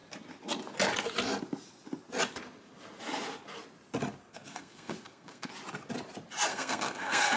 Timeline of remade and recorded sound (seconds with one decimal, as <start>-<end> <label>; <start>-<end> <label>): 0.0-4.3 recorded; 4.3-5.5 remade; 5.5-6.5 recorded; 6.5-7.4 remade